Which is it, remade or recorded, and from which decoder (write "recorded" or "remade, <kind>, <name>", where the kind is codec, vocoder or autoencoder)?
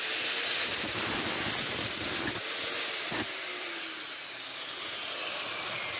recorded